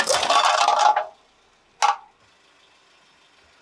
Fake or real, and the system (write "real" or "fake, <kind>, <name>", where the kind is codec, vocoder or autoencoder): real